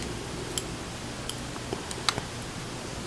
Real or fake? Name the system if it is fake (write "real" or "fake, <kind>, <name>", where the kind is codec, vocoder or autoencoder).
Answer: real